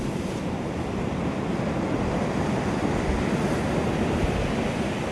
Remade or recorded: recorded